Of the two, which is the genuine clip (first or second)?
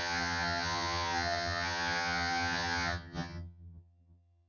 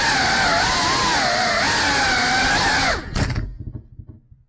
second